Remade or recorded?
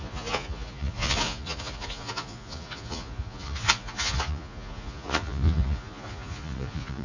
remade